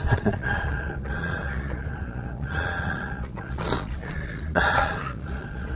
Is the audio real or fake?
fake